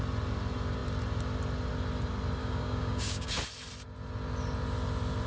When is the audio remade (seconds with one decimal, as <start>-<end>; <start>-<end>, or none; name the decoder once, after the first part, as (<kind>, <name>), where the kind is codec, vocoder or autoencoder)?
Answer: 2.4-3.4 (codec, DAC)